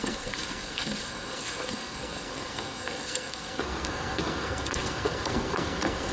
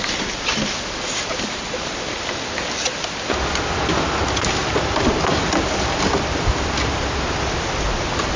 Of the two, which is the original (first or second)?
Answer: second